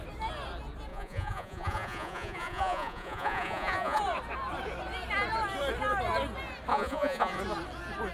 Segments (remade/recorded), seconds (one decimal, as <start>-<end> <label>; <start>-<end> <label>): 0.0-0.9 recorded; 0.9-4.0 remade; 4.0-6.7 recorded; 6.7-7.4 remade; 7.4-8.1 recorded